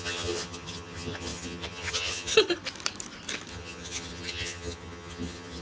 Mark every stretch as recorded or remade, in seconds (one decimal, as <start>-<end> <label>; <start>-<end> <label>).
0.0-2.3 remade; 2.3-3.5 recorded; 3.5-5.6 remade